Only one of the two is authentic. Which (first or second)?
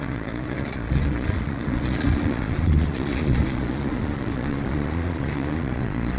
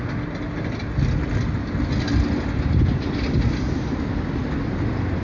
second